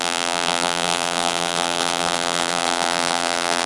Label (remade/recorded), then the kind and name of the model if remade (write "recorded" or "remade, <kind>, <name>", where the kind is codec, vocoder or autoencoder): remade, vocoder, BigVGAN v2